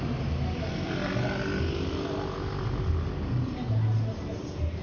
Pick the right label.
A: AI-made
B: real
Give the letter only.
B